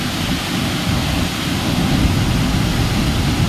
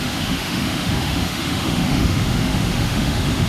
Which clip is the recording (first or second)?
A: first